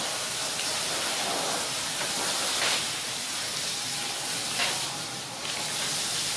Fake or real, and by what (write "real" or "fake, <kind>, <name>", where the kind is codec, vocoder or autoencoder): real